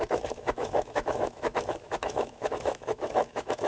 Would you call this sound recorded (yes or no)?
no